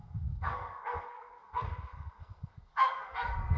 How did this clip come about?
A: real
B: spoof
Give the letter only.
B